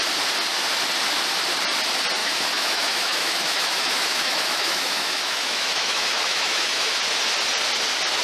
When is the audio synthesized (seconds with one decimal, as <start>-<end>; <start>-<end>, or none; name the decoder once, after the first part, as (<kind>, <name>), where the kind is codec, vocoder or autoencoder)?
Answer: 2.2-6.9 (autoencoder, DAC-VAE)